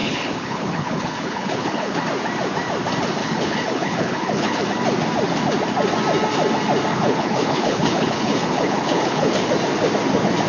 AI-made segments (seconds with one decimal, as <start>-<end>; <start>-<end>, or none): 0.0-2.0; 3.2-4.6; 6.9-9.5